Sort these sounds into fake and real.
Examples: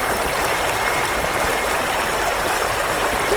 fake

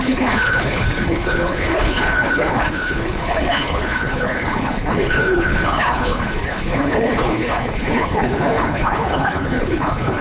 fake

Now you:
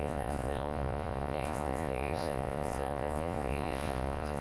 fake